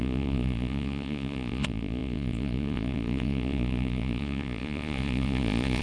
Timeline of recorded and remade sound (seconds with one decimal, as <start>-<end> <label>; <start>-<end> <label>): 0.0-5.8 remade